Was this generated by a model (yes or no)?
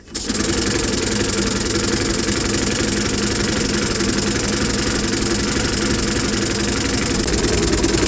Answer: no